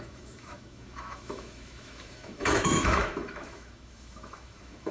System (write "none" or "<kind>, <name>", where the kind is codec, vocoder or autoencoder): autoencoder, DAC-VAE